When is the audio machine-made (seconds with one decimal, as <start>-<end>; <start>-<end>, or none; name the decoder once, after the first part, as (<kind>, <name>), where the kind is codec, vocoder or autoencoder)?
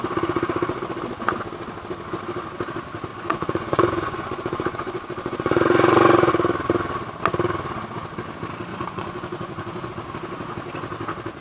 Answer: 3.1-6.3 (vocoder, Vocos); 8.7-9.9